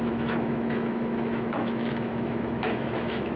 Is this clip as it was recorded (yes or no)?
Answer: no